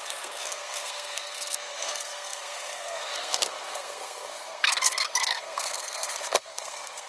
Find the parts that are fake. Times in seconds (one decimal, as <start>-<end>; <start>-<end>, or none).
0.0-7.1